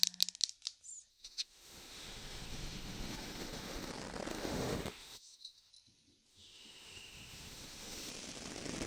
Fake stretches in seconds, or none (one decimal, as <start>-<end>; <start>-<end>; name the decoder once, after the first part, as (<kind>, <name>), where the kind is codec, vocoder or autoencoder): 1.1-3.9 (autoencoder, DAC-VAE); 4.3-5.7; 6.3-8.1